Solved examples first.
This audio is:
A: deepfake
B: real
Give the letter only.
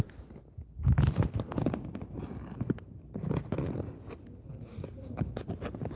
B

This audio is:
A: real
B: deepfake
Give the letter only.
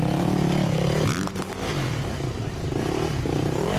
B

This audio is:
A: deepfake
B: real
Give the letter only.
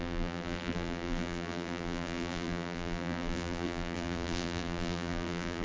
A